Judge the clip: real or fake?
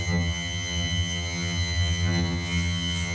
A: fake